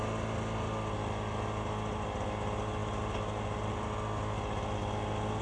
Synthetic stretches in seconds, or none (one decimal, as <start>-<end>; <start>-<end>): none